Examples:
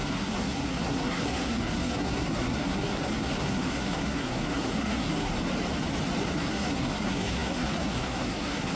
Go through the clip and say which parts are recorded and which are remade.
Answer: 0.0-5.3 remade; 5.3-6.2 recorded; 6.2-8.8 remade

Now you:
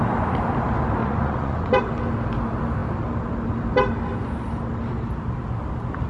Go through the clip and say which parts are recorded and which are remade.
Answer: 0.0-1.0 recorded; 1.0-1.8 remade; 1.8-6.1 recorded

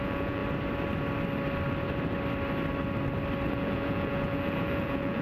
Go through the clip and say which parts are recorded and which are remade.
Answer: 0.0-0.4 remade; 0.4-3.5 recorded; 3.5-5.2 remade

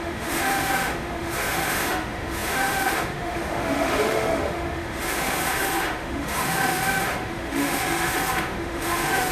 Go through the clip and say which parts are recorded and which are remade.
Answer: 0.0-9.3 remade

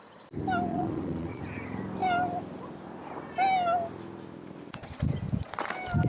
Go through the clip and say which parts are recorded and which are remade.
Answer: 0.0-0.7 recorded; 0.7-1.4 remade; 1.4-6.1 recorded

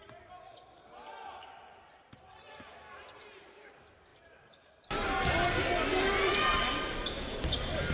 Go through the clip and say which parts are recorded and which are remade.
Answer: 0.0-7.9 recorded